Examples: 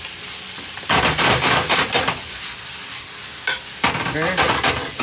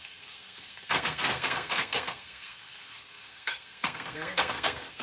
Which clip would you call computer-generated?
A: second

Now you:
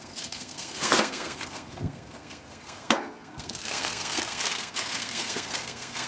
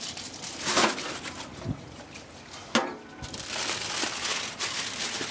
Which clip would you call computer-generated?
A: first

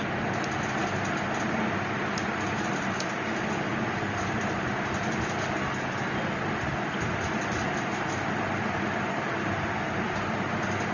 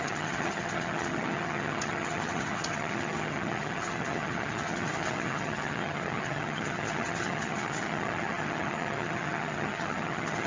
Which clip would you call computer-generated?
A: second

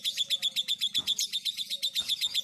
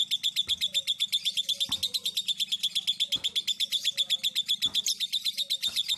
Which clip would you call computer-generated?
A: first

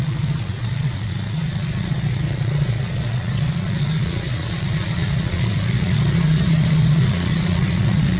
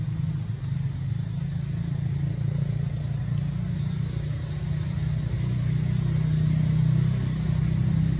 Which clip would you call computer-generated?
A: first